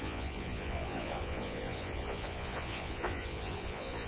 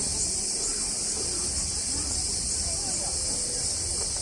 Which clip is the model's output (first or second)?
first